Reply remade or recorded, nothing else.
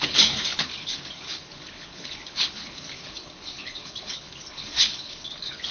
remade